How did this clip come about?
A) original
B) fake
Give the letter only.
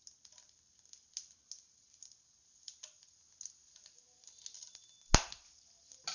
A